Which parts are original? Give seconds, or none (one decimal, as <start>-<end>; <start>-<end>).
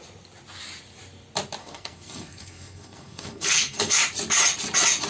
0.0-1.6; 4.0-5.1